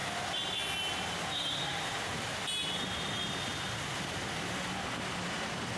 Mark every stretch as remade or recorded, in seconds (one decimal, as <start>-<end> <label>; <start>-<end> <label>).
0.0-5.8 recorded